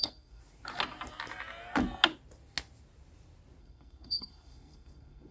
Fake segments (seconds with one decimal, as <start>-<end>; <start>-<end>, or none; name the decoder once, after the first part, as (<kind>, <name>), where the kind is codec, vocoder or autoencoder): 0.0-0.4 (codec, SNAC); 3.6-5.3